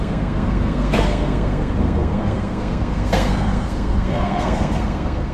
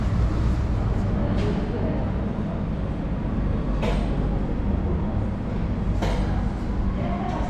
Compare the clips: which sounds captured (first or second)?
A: second